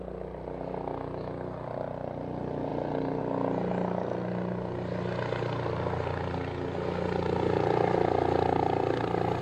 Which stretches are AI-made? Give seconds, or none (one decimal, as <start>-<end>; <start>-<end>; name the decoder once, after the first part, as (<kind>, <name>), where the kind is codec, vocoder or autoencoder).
none